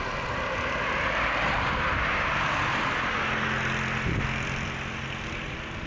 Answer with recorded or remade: recorded